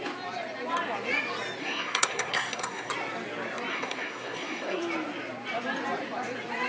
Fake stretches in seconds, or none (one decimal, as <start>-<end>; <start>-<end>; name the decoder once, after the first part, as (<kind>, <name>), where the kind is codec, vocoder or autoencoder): 1.6-2.9 (codec, SNAC); 3.7-4.8